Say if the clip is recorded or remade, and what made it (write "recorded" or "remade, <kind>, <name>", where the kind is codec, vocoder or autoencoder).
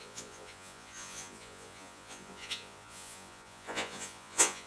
remade, vocoder, Vocos